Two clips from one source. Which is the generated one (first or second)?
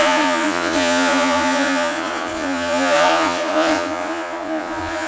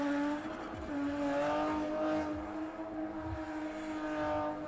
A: first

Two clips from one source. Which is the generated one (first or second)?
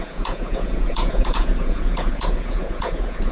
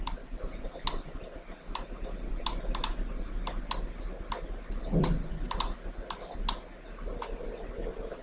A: first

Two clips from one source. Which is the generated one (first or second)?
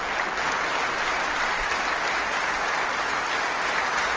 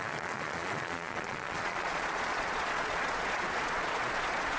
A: second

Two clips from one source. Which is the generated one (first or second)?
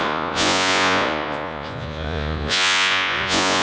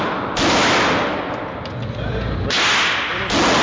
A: first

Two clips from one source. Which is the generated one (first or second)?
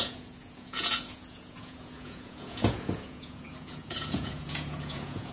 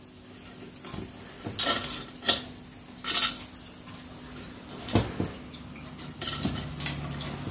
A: first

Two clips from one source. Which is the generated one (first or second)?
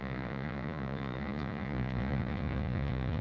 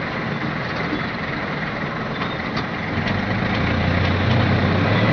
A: first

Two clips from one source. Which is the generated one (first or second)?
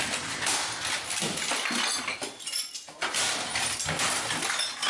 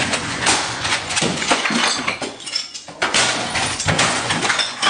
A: second